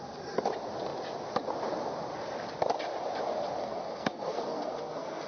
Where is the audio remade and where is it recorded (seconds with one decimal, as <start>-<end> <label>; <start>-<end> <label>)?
0.0-3.6 recorded; 3.6-5.3 remade